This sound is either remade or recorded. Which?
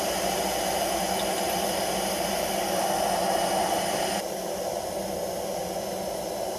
recorded